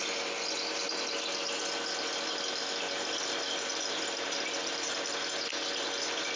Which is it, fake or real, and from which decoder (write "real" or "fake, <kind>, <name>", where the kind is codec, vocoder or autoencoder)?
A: real